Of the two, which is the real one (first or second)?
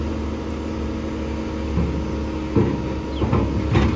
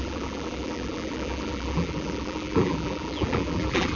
first